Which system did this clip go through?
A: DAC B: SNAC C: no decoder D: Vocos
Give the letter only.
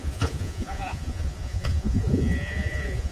D